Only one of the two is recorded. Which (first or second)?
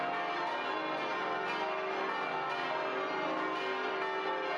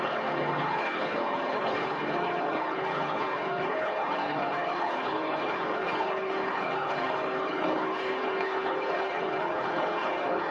first